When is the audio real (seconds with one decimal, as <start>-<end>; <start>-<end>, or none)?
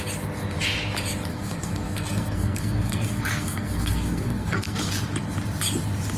0.0-1.3; 4.9-6.2